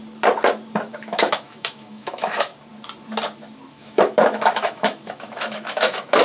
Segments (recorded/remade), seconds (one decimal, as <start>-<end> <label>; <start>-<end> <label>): 0.0-0.9 recorded; 0.9-2.5 remade; 2.5-3.7 recorded; 3.7-6.2 remade